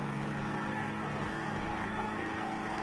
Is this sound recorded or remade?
remade